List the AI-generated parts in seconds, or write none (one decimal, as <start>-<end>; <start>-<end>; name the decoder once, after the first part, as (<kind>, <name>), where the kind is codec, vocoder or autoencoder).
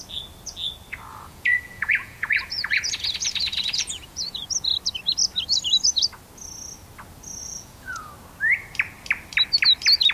1.1-4.5 (vocoder, Vocos); 7.4-8.1